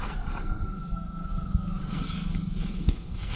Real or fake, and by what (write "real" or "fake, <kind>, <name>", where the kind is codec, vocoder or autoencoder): fake, codec, SNAC